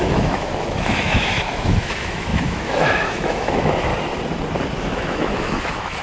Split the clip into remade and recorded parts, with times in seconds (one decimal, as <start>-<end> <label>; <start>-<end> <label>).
0.0-3.9 remade; 3.9-4.8 recorded; 4.8-6.0 remade